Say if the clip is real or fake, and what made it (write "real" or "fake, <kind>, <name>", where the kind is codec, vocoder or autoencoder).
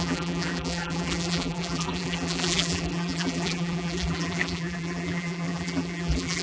fake, vocoder, BigVGAN v2